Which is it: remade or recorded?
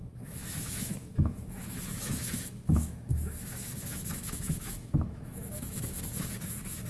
remade